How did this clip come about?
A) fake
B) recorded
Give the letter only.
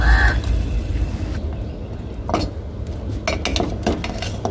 B